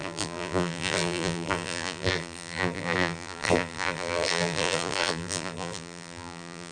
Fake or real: fake